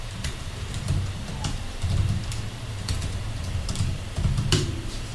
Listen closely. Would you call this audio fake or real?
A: fake